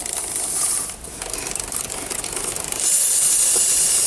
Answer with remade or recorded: recorded